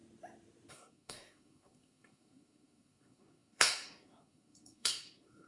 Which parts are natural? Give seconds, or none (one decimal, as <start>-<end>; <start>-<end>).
0.0-0.7